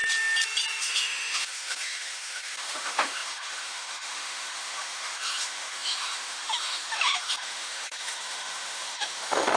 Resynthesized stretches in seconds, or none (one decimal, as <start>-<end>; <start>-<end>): 0.8-9.6